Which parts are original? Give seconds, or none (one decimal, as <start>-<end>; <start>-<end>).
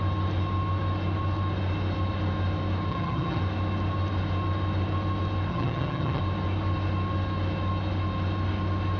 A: 0.0-2.9; 3.4-5.5; 6.2-9.0